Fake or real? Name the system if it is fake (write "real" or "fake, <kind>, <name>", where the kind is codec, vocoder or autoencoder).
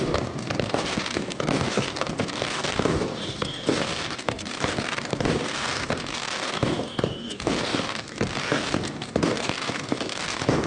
fake, codec, DAC